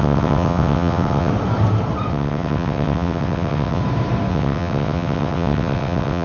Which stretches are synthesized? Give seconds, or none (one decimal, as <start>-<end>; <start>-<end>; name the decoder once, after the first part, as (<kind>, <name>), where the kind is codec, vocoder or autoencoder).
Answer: 0.0-1.3 (vocoder, WaveNeXt); 2.1-3.8; 4.3-6.2